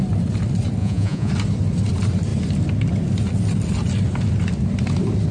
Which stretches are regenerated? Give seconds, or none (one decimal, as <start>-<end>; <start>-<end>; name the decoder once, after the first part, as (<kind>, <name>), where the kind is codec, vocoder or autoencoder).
0.8-1.3 (vocoder, Vocos)

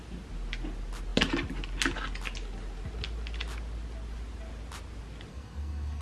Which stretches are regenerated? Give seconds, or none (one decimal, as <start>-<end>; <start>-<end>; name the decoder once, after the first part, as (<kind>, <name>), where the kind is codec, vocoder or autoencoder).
5.3-6.0 (codec, SNAC)